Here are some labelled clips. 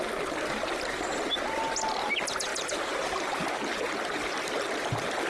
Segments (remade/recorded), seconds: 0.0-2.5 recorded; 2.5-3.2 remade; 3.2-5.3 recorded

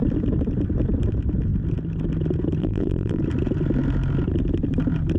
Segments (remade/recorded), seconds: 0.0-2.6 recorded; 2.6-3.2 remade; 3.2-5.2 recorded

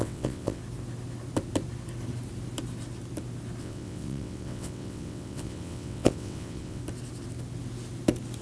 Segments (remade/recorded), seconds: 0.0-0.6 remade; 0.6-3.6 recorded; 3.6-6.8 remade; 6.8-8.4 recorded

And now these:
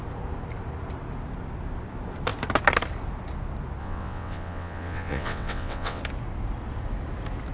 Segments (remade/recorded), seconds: 0.0-3.8 recorded; 3.8-6.0 remade; 6.0-7.5 recorded